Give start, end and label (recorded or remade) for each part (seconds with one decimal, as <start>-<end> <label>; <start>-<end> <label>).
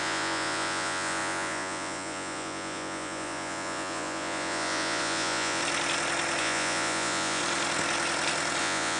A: 0.0-5.6 remade; 5.6-6.4 recorded; 6.4-7.4 remade; 7.4-8.6 recorded; 8.6-9.0 remade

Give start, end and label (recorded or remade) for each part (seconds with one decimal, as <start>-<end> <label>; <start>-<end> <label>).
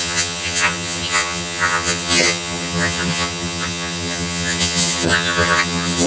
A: 0.0-6.1 remade